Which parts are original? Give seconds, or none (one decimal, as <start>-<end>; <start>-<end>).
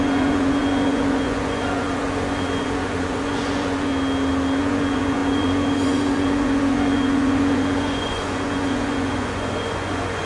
3.9-4.6